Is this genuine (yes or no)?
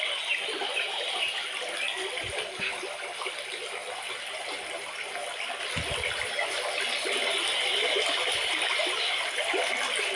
yes